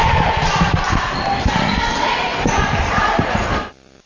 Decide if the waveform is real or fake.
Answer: real